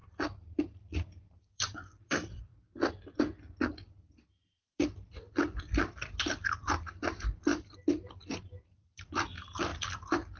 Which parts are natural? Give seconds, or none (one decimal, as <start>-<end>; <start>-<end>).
0.0-0.6; 2.5-3.7; 7.5-8.1